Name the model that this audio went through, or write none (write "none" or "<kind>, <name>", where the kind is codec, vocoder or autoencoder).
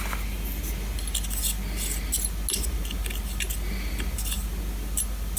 none